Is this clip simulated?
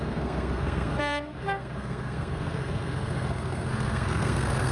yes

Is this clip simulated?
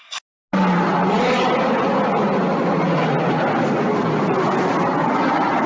no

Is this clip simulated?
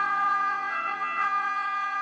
yes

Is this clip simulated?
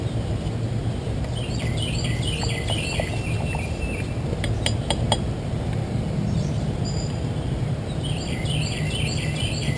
yes